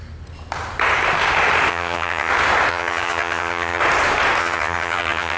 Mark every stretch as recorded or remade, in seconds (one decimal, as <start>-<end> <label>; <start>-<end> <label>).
0.0-1.7 recorded; 1.7-2.3 remade; 2.3-2.7 recorded; 2.7-3.8 remade; 3.8-4.4 recorded; 4.4-5.4 remade